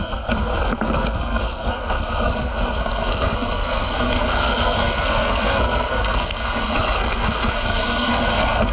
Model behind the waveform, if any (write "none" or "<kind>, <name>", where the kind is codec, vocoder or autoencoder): codec, SNAC